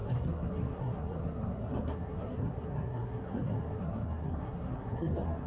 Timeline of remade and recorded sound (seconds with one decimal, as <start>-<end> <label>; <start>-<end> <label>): 0.0-5.5 remade